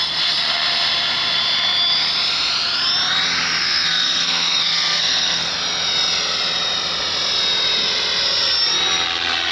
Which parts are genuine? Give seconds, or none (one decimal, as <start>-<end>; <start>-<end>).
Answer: 0.0-3.6; 5.5-9.5